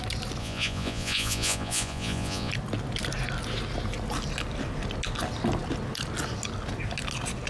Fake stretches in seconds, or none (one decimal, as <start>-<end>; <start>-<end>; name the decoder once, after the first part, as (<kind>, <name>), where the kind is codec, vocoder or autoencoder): 0.4-2.5 (vocoder, Vocos)